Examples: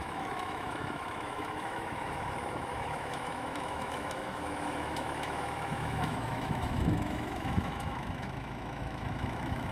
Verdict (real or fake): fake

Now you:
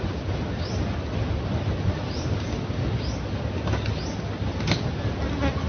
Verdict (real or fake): real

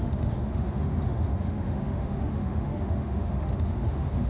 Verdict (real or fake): fake